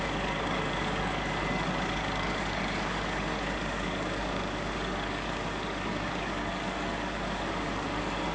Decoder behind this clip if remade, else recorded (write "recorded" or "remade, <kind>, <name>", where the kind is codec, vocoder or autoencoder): remade, codec, DAC